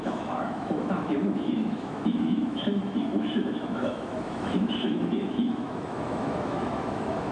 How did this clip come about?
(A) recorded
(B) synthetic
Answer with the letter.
B